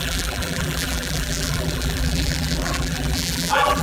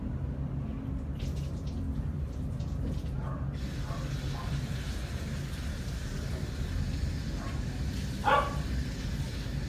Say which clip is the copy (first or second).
first